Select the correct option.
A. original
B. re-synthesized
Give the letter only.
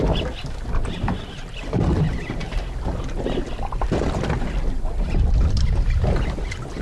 A